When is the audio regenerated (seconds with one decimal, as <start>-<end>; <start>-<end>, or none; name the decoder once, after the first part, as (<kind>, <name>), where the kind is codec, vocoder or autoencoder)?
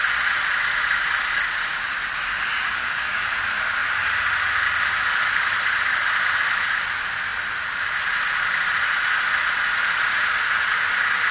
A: 2.5-3.3 (codec, DAC)